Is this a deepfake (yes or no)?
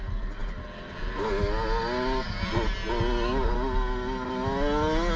no